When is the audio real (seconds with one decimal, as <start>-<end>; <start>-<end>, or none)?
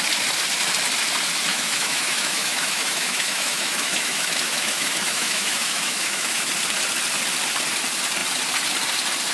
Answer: 0.0-1.5; 6.5-9.3